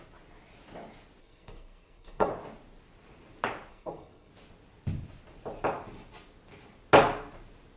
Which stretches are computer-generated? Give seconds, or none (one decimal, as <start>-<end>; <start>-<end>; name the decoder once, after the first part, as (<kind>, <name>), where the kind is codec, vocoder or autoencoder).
1.2-2.3 (codec, SNAC); 3.7-4.3